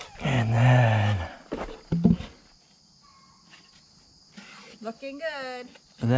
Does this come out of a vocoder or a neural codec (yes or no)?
no